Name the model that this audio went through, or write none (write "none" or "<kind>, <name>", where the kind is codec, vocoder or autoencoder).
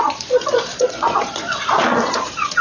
vocoder, Vocos